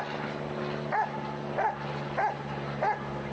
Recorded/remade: recorded